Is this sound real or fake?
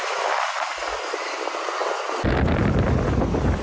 real